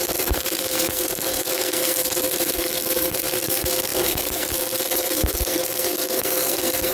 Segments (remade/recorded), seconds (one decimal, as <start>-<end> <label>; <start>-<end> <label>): 0.0-6.9 remade